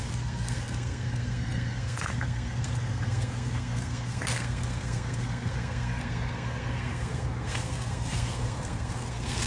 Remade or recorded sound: remade